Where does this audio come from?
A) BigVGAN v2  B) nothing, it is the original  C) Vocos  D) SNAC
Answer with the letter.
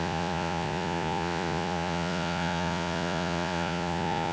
C